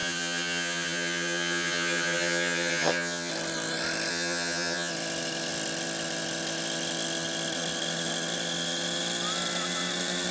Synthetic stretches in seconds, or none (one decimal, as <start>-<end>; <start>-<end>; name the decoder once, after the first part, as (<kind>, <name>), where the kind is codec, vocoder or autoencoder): 0.0-3.3 (vocoder, HiFi-GAN); 4.1-4.9